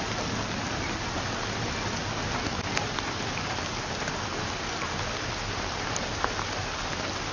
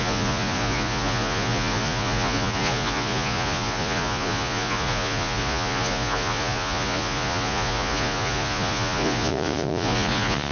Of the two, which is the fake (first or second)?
second